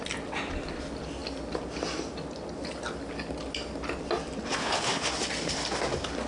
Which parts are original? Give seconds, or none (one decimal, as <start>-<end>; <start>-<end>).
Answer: 0.0-4.6; 5.1-6.3